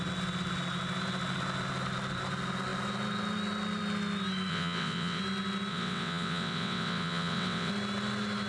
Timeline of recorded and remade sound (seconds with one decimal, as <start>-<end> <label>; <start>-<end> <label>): 0.0-4.5 recorded; 4.5-5.2 remade; 5.2-5.7 recorded; 5.7-7.7 remade; 7.7-8.5 recorded